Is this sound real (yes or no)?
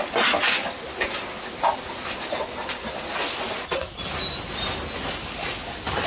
yes